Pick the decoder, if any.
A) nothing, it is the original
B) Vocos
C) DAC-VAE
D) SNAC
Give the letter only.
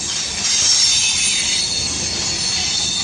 A